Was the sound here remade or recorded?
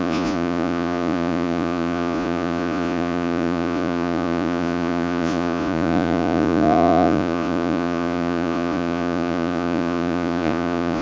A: remade